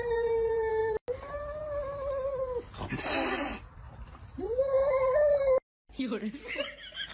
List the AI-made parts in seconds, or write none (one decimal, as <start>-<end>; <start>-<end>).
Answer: none